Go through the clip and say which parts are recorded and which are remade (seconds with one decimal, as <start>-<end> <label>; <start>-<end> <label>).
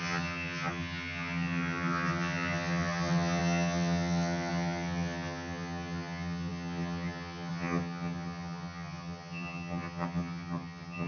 0.0-11.1 remade